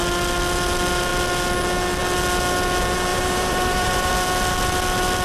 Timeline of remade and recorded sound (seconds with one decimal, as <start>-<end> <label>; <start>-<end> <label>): 0.0-3.1 recorded; 3.1-4.1 remade; 4.1-5.2 recorded